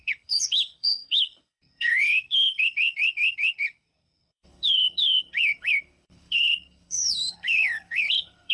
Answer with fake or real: fake